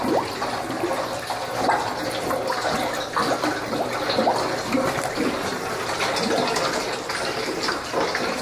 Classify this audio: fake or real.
real